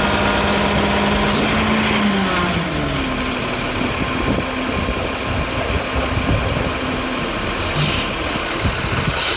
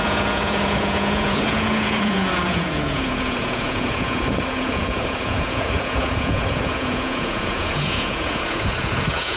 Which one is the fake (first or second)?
second